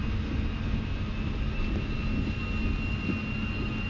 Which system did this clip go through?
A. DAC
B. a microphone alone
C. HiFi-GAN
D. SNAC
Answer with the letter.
B